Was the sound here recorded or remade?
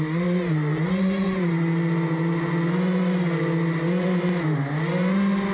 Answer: recorded